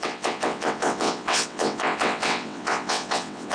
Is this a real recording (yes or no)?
no